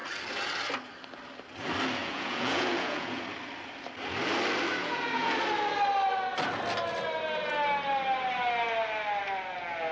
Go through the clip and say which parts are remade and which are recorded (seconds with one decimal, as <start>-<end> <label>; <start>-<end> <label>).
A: 0.0-2.0 recorded; 2.0-3.2 remade; 3.2-4.8 recorded; 4.8-5.3 remade; 5.3-9.9 recorded